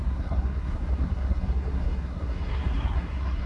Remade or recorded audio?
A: remade